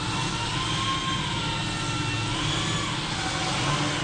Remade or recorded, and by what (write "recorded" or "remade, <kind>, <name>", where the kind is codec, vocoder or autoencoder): recorded